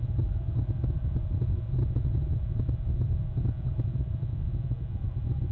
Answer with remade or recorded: recorded